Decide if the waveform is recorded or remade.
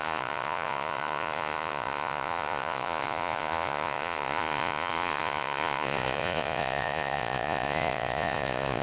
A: remade